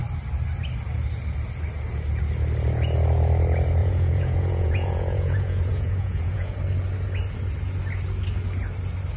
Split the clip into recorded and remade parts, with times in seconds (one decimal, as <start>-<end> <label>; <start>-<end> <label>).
0.0-3.8 recorded; 3.8-6.5 remade; 6.5-9.2 recorded

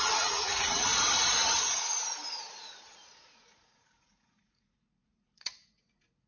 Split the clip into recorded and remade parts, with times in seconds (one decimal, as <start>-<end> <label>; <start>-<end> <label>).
0.0-0.9 remade; 0.9-2.4 recorded; 2.4-6.3 remade

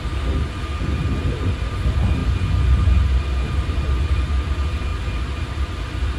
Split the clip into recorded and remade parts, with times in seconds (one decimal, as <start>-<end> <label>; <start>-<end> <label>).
0.0-6.2 recorded

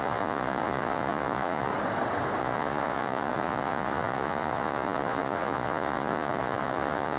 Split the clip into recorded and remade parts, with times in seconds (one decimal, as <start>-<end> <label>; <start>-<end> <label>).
0.0-1.7 remade; 1.7-2.4 recorded; 2.4-7.2 remade

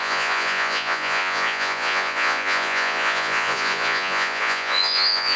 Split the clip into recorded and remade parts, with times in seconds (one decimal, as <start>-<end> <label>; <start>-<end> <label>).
0.0-5.4 remade

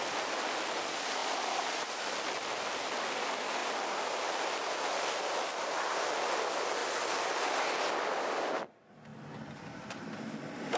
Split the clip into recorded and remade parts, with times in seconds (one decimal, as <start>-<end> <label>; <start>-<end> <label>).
0.0-10.8 recorded

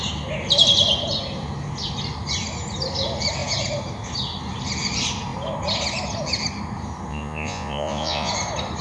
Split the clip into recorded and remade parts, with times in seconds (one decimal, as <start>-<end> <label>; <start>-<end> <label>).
0.0-7.1 recorded; 7.1-8.3 remade; 8.3-8.8 recorded